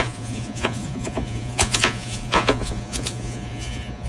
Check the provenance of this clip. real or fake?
fake